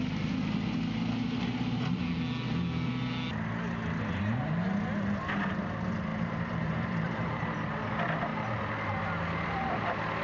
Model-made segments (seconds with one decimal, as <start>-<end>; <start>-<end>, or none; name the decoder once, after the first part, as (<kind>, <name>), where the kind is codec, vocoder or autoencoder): 6.1-7.4 (vocoder, BigVGAN v2)